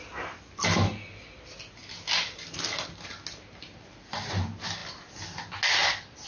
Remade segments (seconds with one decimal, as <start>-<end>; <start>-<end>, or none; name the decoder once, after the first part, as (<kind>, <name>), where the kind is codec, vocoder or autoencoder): none